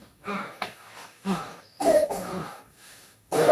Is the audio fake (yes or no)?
yes